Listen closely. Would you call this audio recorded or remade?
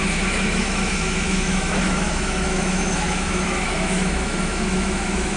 remade